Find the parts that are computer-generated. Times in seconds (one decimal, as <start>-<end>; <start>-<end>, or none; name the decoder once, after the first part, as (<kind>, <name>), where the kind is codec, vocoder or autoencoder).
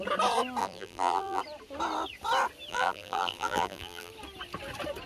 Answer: 0.6-1.4 (vocoder, BigVGAN v2); 2.7-4.1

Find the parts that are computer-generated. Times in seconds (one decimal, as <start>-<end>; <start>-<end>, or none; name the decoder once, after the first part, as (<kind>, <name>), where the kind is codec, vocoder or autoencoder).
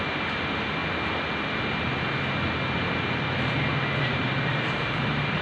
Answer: 0.0-0.8 (vocoder, BigVGAN v2); 4.0-5.4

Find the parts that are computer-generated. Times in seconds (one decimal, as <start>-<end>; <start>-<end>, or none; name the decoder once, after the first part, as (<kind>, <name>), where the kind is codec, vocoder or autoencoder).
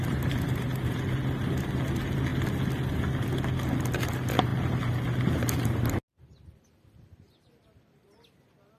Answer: 0.0-1.0 (vocoder, BigVGAN v2)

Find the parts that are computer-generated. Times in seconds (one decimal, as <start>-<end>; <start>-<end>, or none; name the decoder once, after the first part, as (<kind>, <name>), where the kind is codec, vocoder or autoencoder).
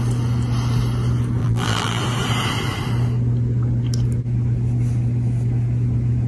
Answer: 1.4-2.0 (vocoder, BigVGAN v2)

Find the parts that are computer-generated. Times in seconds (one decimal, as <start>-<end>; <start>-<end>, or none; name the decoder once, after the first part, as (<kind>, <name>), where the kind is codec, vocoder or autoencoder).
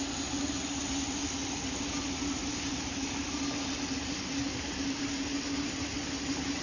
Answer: 5.3-6.1 (vocoder, BigVGAN v2)